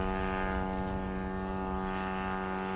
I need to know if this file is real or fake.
real